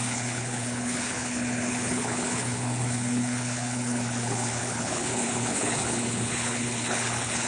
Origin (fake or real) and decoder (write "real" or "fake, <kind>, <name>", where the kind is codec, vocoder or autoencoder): fake, codec, HILCodec